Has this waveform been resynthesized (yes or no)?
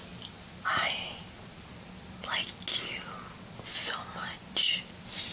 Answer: no